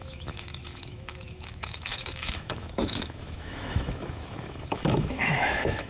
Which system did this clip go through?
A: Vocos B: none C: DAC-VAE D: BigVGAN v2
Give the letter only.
C